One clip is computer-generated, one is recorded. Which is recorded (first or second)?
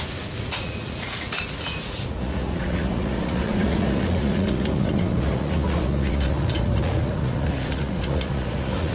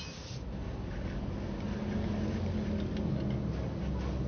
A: second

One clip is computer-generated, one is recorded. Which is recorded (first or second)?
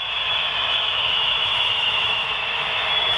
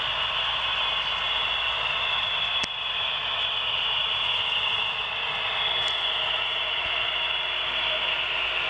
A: second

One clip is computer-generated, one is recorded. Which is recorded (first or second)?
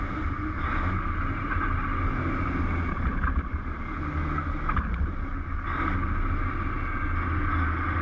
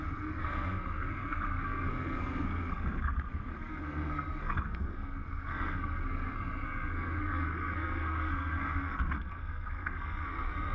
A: first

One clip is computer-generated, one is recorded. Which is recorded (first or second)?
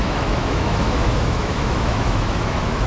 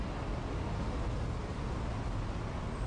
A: second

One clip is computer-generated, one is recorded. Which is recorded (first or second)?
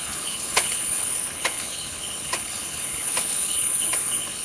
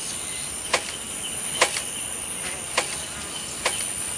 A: second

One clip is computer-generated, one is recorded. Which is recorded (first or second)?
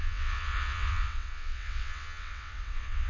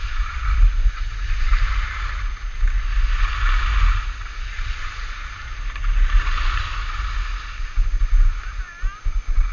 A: second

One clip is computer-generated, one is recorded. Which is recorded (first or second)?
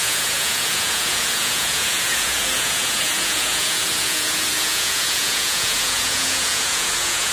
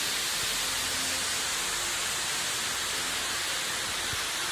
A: second